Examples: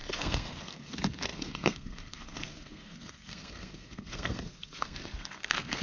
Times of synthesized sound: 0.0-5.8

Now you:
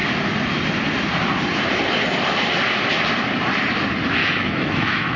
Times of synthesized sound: 4.2-5.2

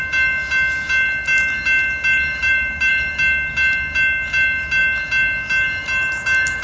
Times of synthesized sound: 2.4-2.9

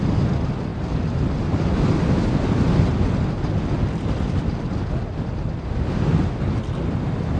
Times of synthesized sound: none

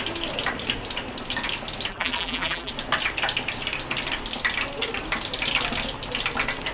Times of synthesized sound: 1.9-2.7